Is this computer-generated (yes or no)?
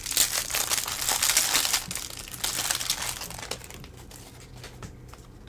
no